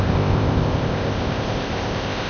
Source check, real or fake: fake